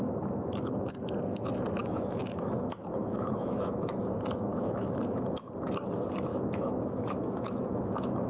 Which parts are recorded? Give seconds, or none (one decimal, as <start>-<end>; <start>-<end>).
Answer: 0.0-1.8; 3.9-4.5; 5.5-6.3